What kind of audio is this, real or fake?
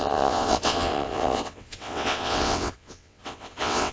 fake